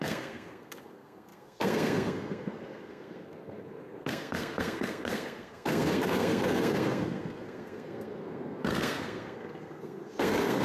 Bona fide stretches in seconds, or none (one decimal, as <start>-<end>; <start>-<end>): none